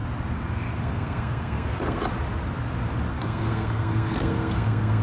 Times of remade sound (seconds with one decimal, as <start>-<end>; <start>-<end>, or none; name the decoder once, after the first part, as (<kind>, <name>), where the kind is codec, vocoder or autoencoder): 0.8-2.0 (codec, SNAC); 3.1-5.0